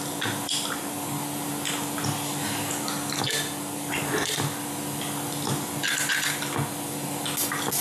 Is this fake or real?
real